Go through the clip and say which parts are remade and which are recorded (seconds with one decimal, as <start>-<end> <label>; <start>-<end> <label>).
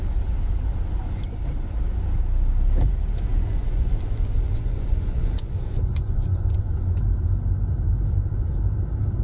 0.0-3.3 recorded; 3.3-7.0 remade; 7.0-9.2 recorded